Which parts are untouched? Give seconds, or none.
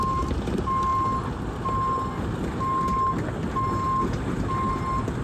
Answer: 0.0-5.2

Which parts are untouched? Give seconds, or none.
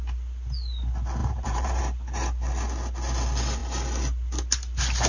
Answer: 0.0-1.2; 1.8-5.1